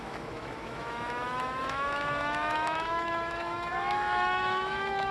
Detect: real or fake fake